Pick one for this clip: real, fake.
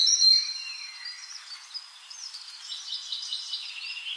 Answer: real